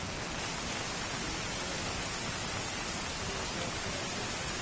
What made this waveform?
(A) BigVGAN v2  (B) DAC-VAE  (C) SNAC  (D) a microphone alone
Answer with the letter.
D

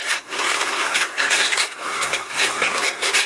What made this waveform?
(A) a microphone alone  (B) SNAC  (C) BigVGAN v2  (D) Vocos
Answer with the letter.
B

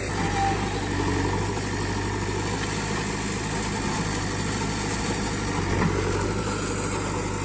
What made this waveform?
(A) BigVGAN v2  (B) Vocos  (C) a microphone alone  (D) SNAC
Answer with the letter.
C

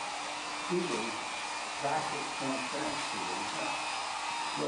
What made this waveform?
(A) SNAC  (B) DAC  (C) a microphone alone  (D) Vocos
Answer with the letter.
C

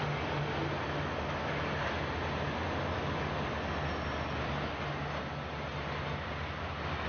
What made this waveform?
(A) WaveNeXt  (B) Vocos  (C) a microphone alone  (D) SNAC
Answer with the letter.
C